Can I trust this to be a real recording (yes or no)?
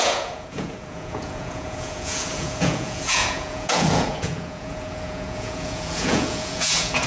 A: no